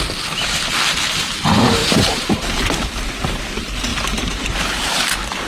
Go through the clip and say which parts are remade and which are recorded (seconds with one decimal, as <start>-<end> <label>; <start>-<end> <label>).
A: 0.0-1.8 recorded; 1.8-3.5 remade; 3.5-3.9 recorded; 3.9-5.0 remade; 5.0-5.5 recorded